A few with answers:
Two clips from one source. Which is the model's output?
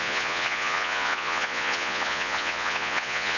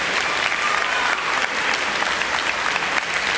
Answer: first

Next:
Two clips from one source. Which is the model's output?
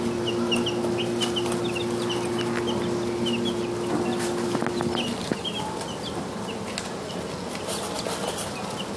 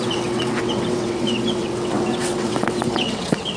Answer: second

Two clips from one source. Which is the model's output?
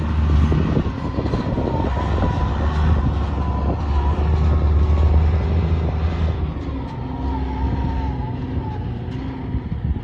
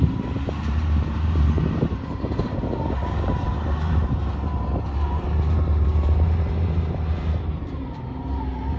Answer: second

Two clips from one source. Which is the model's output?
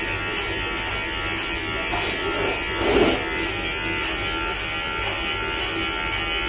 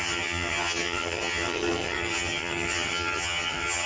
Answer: second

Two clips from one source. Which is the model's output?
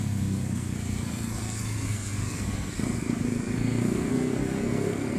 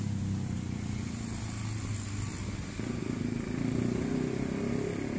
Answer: first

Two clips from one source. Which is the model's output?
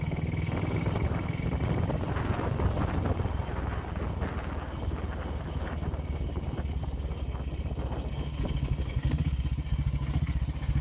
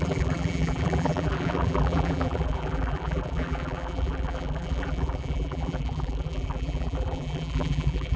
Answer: second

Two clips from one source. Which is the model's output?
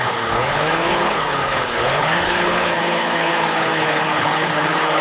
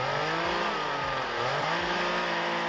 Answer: first